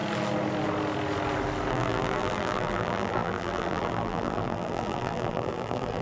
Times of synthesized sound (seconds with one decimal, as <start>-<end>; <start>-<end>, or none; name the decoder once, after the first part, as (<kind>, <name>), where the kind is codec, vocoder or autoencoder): 1.7-6.0 (vocoder, BigVGAN v2)